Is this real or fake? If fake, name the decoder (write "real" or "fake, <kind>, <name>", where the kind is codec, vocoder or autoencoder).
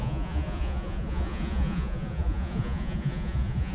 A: fake, vocoder, Vocos